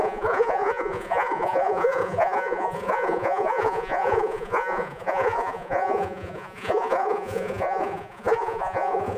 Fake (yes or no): yes